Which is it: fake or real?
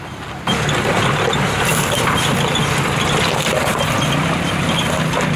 real